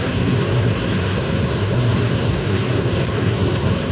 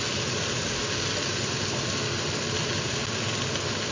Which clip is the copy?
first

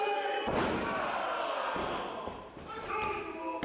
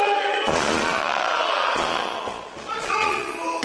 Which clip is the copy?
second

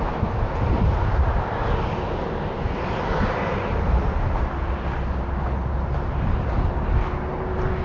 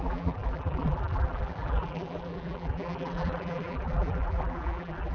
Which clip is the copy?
second